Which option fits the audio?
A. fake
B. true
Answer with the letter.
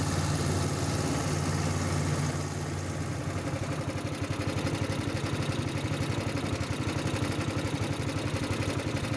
B